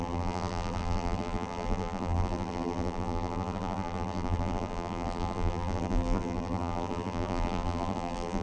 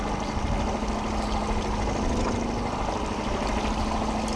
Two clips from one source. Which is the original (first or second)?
second